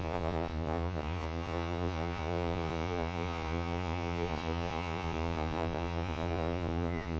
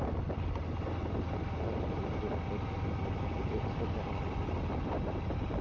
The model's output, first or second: first